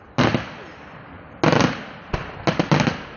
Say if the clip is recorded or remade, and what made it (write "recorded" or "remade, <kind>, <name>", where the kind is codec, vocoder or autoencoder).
recorded